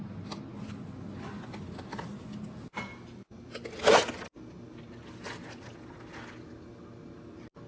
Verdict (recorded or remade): recorded